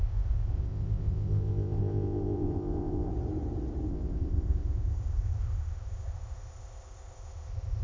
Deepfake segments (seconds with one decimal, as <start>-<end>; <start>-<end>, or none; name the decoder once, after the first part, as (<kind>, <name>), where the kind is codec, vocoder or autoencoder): 0.0-3.1 (codec, ZipCodec); 3.9-7.8